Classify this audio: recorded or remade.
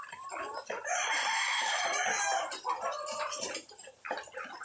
remade